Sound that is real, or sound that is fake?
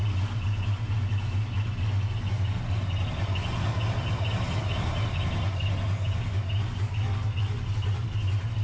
real